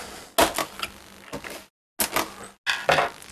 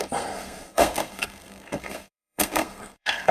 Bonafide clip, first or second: first